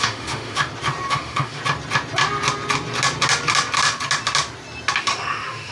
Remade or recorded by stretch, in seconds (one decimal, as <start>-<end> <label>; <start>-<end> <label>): 0.0-0.6 remade; 0.6-1.1 recorded; 1.1-1.6 remade; 1.6-5.0 recorded; 5.0-5.7 remade